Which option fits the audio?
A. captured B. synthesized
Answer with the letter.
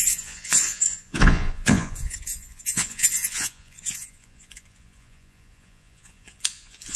B